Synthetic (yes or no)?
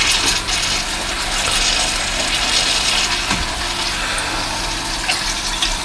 no